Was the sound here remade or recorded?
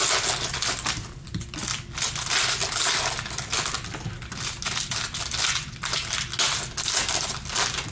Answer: recorded